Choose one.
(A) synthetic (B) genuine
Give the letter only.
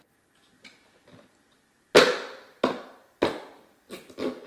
B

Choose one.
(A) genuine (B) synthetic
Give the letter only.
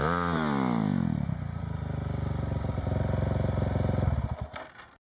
A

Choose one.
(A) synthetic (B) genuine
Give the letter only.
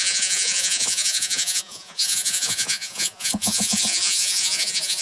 A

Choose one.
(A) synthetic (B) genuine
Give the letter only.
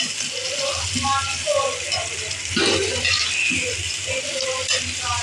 B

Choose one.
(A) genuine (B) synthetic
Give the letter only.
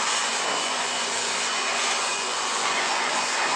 B